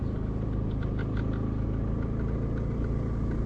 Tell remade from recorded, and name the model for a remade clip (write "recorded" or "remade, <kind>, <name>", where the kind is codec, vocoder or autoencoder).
recorded